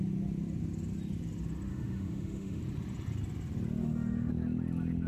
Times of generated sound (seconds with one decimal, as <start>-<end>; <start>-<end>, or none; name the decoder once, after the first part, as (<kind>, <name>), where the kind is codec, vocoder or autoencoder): 1.7-2.6 (autoencoder, DAC-VAE); 3.8-4.3